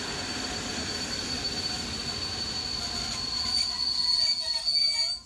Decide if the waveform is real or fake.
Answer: real